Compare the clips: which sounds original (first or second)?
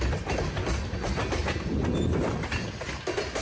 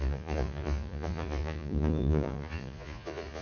first